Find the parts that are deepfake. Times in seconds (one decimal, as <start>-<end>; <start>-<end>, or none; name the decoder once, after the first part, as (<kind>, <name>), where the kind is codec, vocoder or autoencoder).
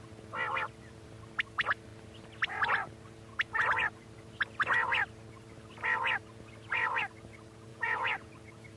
7.7-8.3 (vocoder, Vocos)